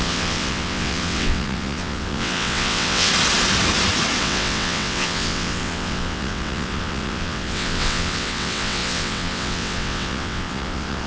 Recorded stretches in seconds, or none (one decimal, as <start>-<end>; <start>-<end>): 3.1-4.2